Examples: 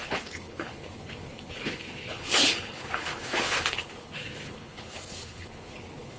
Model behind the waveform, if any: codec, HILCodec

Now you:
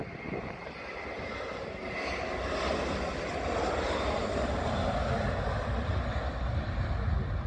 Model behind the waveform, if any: none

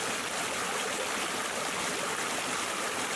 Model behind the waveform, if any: none